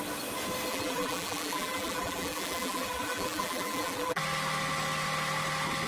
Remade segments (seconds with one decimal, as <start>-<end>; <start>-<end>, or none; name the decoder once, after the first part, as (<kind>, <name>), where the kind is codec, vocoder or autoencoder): 0.7-4.2 (vocoder, BigVGAN v2)